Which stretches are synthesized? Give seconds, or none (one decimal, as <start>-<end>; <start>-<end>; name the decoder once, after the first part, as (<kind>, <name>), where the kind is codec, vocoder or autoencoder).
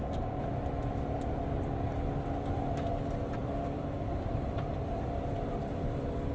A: 3.4-6.3 (vocoder, BigVGAN v2)